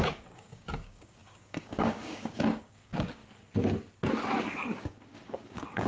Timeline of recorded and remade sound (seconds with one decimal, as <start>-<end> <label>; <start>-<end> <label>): 0.0-3.2 remade; 3.2-4.4 recorded; 4.4-5.9 remade